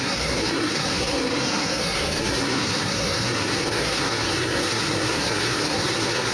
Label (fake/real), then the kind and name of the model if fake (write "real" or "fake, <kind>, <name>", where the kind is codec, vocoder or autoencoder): fake, codec, SNAC